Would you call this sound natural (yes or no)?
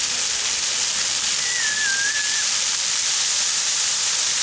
yes